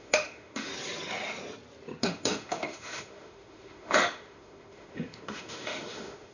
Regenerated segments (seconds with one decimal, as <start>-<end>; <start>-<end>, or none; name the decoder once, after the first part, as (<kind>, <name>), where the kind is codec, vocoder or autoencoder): 0.0-0.7 (autoencoder, DAC-VAE); 2.0-6.3